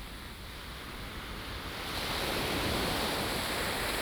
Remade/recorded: recorded